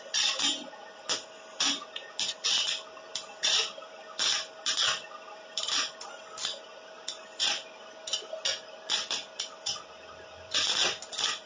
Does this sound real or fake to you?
real